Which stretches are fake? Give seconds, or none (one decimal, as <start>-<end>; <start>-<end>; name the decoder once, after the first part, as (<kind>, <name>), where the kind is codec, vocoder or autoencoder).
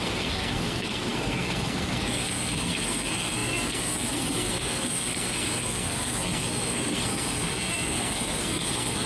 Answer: 0.0-9.1 (codec, SNAC)